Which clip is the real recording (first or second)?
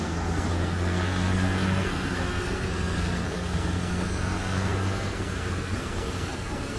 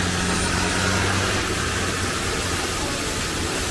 second